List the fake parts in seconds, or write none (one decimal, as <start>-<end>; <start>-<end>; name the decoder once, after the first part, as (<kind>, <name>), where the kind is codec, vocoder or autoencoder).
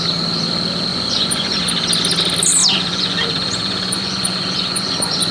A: 0.9-1.7 (vocoder, Vocos); 2.6-5.3